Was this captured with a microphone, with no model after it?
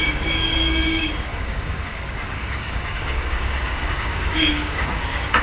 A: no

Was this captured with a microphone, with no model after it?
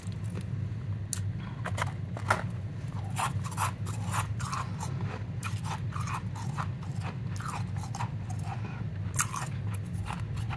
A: yes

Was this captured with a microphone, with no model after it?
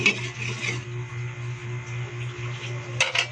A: yes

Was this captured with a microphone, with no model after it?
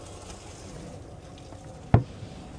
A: yes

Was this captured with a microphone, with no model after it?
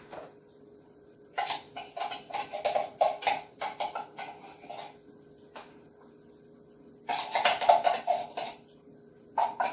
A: yes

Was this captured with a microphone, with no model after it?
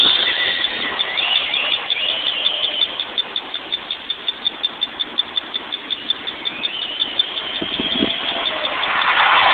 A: yes